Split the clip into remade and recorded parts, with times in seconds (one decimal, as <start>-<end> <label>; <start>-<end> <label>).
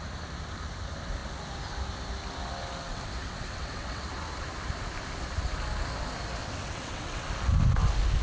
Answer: 0.0-2.9 recorded; 2.9-4.1 remade; 4.1-6.4 recorded; 6.4-7.2 remade; 7.2-8.2 recorded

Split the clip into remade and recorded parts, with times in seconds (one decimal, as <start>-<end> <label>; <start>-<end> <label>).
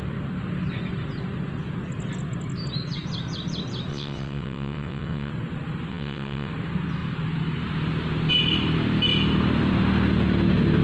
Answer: 0.0-3.9 recorded; 3.9-5.3 remade; 5.3-5.9 recorded; 5.9-6.5 remade; 6.5-10.8 recorded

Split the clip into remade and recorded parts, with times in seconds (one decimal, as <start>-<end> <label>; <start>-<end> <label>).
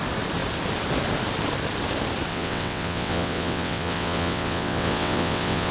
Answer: 0.0-2.3 recorded; 2.3-5.7 remade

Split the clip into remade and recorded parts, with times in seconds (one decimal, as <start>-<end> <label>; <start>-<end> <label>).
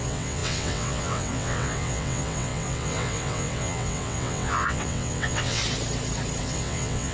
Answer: 0.0-5.6 remade; 5.6-6.4 recorded; 6.4-7.1 remade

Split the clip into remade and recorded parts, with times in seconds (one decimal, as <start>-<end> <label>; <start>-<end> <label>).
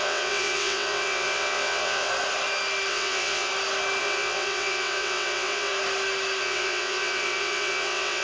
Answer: 0.0-2.1 remade; 2.1-2.9 recorded; 2.9-3.5 remade; 3.5-4.0 recorded; 4.0-5.7 remade; 5.7-6.4 recorded; 6.4-8.2 remade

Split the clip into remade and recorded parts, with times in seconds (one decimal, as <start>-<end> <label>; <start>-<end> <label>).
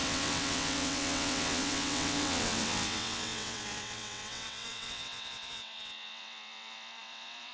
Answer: 0.0-7.5 remade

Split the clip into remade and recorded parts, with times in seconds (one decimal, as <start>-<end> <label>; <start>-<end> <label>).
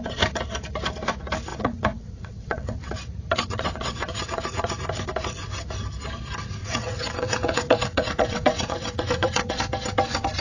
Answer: 0.0-1.5 recorded; 1.5-2.9 remade; 2.9-3.5 recorded; 3.5-4.7 remade; 4.7-6.6 recorded; 6.6-9.6 remade; 9.6-10.4 recorded